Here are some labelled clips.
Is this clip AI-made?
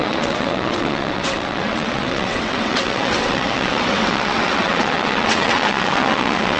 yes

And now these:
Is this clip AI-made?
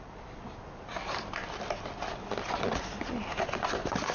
no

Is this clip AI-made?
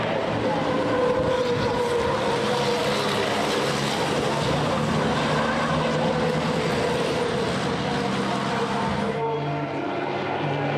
no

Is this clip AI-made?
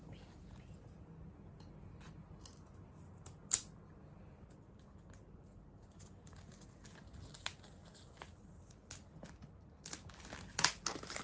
no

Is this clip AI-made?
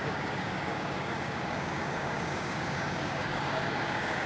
yes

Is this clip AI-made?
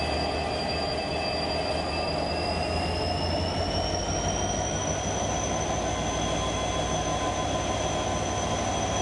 no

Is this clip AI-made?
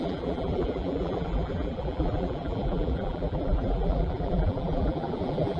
yes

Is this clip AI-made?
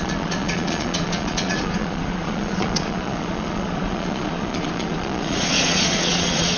yes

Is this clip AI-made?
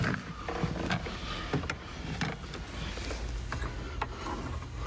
no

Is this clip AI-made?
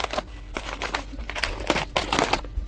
no